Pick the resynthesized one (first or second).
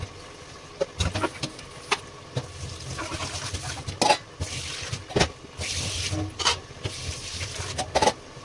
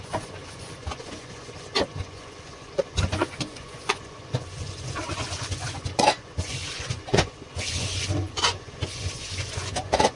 second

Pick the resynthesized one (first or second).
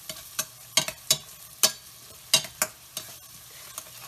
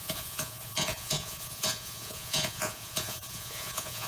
second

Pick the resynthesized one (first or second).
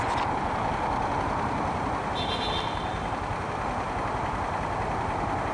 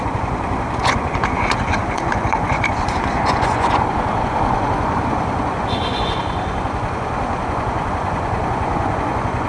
second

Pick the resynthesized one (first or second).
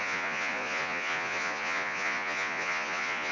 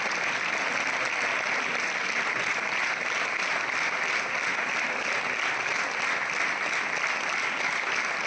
first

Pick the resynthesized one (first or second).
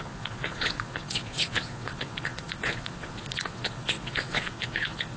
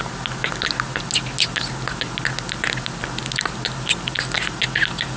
first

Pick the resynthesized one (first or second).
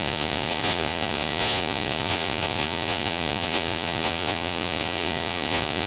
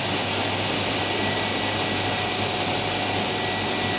first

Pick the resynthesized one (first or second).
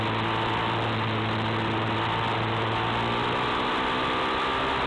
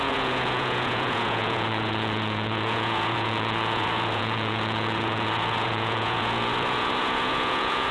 second